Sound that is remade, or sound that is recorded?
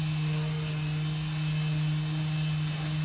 recorded